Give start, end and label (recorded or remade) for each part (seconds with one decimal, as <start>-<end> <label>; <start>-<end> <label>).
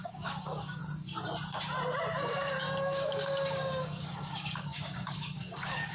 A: 0.0-0.8 remade; 0.8-2.3 recorded; 2.3-5.9 remade